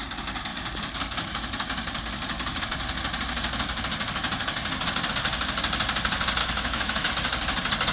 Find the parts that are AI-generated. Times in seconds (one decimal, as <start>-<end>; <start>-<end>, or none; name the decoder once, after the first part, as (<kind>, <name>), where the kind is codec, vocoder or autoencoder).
6.4-7.1 (autoencoder, DAC-VAE)